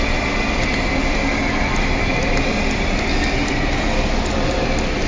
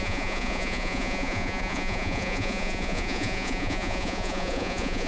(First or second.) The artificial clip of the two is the second